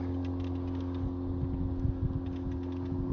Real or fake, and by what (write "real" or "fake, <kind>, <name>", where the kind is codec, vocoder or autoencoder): real